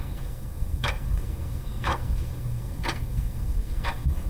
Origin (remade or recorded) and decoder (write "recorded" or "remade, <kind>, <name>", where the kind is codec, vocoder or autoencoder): remade, codec, SNAC